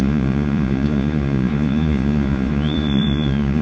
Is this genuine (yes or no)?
no